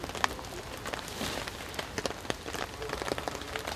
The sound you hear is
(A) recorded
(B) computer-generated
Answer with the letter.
A